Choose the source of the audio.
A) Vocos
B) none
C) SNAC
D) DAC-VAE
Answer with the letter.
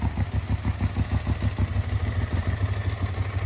B